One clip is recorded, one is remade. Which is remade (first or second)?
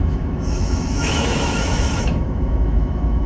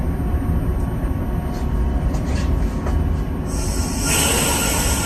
first